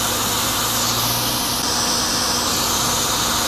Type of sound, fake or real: real